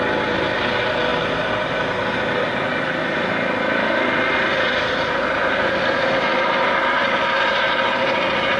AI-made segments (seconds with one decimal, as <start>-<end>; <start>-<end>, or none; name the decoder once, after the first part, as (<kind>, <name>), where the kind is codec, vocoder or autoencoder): none